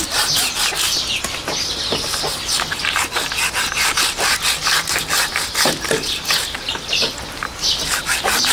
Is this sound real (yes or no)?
yes